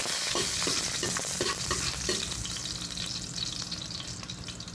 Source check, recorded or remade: recorded